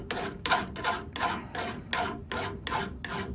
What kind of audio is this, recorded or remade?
recorded